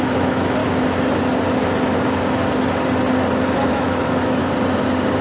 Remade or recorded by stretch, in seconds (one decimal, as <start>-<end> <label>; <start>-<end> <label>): 0.0-0.6 remade; 0.6-3.7 recorded; 3.7-4.4 remade; 4.4-5.2 recorded